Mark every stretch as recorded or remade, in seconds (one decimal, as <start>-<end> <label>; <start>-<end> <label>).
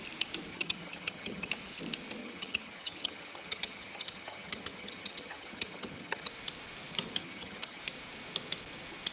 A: 0.0-0.5 recorded; 0.5-1.5 remade; 1.5-2.2 recorded; 2.2-6.3 remade; 6.3-7.2 recorded; 7.2-7.8 remade; 7.8-9.1 recorded